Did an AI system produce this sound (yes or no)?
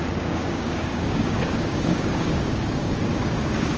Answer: yes